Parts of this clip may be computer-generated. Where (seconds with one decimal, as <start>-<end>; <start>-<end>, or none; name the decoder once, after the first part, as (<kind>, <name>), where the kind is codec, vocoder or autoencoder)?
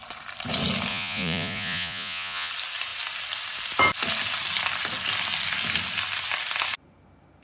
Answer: 0.9-2.5 (vocoder, Vocos)